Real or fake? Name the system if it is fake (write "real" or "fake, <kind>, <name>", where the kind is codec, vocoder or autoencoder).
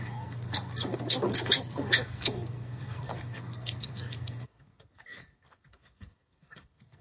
fake, codec, SNAC